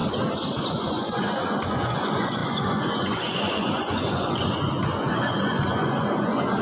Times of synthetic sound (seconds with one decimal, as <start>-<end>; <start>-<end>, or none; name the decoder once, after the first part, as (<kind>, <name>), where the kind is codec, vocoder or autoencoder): 0.7-6.6 (vocoder, Vocos)